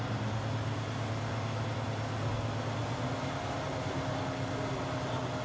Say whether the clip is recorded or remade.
recorded